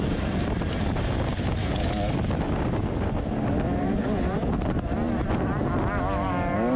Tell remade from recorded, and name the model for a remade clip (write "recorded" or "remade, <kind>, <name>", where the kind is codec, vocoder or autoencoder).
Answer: recorded